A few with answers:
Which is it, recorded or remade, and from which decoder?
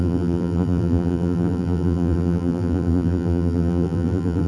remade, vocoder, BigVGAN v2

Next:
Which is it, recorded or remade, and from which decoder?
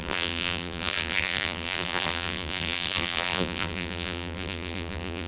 remade, vocoder, BigVGAN v2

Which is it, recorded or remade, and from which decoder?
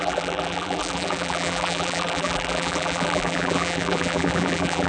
remade, vocoder, BigVGAN v2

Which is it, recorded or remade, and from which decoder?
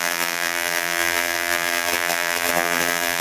remade, vocoder, BigVGAN v2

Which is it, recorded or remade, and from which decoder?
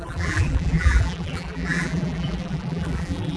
remade, vocoder, BigVGAN v2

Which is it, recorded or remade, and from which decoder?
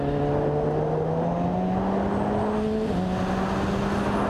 recorded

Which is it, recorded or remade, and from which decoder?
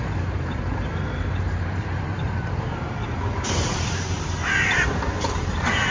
remade, vocoder, BigVGAN v2